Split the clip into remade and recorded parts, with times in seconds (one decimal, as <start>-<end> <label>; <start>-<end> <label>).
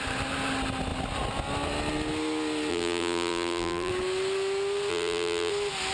0.0-2.7 recorded; 2.7-3.9 remade; 3.9-4.9 recorded; 4.9-5.5 remade; 5.5-5.9 recorded